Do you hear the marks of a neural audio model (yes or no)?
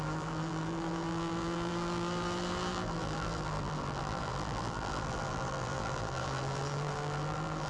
yes